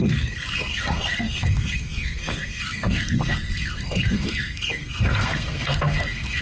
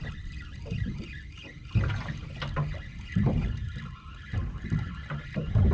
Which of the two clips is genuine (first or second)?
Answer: second